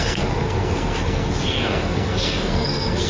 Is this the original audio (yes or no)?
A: no